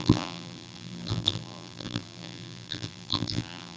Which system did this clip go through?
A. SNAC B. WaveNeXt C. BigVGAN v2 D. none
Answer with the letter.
C